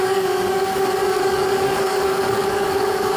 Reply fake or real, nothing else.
fake